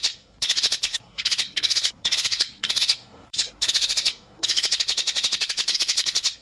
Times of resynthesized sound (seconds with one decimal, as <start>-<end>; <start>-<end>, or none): 0.0-6.4